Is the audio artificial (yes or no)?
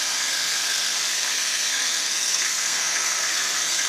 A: yes